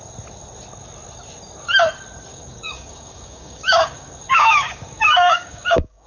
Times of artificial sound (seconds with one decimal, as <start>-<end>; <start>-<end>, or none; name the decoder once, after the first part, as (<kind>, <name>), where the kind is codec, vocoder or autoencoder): 2.3-6.1 (codec, DAC)